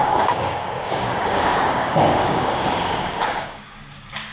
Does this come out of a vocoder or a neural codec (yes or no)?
yes